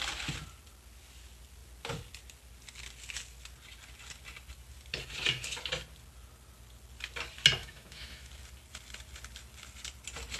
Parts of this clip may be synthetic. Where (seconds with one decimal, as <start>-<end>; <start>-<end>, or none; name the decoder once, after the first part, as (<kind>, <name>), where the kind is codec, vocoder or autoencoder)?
7.6-8.3 (autoencoder, DAC-VAE)